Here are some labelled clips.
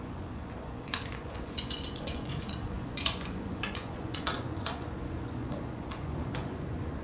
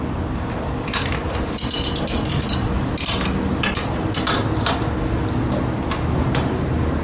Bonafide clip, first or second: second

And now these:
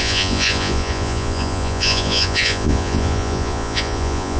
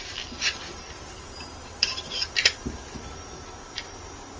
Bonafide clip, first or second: second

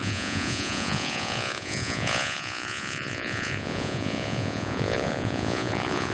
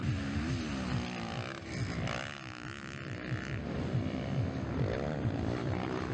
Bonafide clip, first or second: second